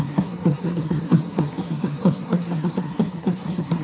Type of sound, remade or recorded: remade